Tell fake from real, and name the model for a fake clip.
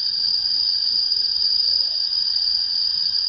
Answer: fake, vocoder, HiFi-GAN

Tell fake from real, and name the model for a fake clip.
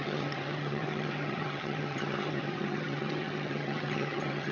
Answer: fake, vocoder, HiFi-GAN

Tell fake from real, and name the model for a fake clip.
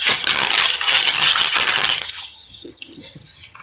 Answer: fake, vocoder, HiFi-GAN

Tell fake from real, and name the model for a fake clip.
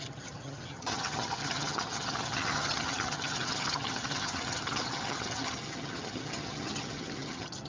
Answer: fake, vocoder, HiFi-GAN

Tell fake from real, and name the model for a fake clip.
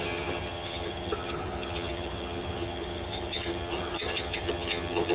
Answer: fake, vocoder, HiFi-GAN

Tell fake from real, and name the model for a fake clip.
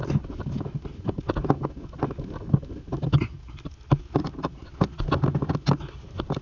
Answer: real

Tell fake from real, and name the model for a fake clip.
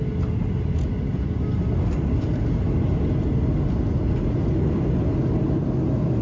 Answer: real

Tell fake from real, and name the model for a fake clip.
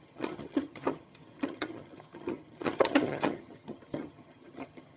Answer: fake, vocoder, HiFi-GAN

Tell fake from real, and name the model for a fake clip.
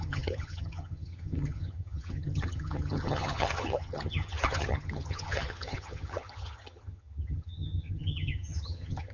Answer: fake, vocoder, HiFi-GAN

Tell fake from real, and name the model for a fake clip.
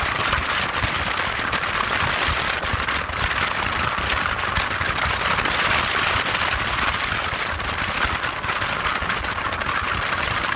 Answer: real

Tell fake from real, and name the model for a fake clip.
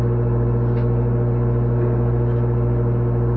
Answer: real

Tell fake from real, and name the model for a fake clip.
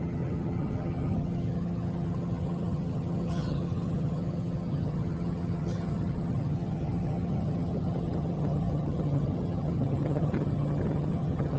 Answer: fake, vocoder, HiFi-GAN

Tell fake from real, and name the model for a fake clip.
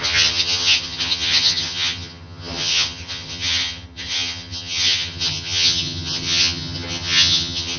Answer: fake, vocoder, HiFi-GAN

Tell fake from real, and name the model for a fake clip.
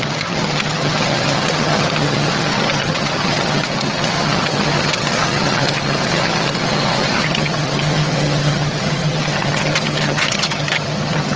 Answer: fake, vocoder, HiFi-GAN